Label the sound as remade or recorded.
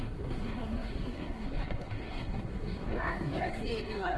remade